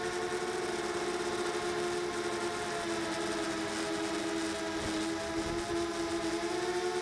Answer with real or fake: real